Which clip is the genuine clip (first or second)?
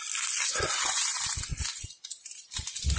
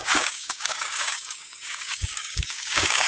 first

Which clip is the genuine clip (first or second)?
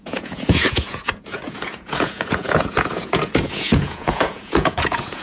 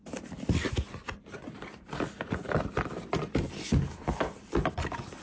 second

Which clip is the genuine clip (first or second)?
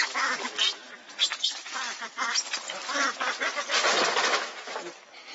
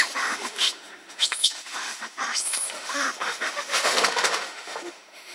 first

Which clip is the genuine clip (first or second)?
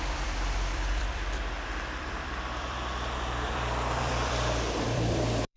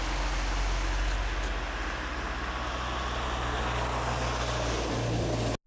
second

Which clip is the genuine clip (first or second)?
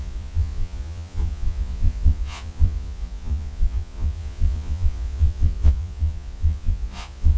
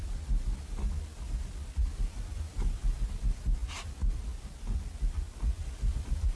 second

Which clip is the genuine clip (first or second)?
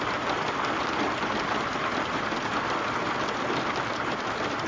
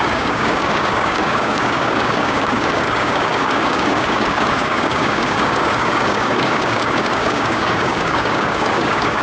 first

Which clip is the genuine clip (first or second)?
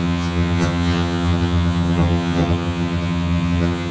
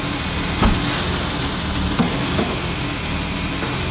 second